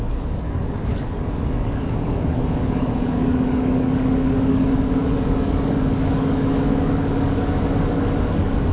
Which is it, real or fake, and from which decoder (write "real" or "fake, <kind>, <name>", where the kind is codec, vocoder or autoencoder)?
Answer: fake, codec, DAC